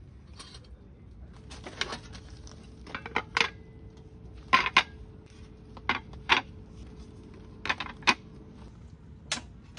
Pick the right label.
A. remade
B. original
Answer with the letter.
B